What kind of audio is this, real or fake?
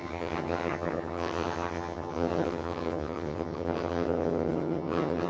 fake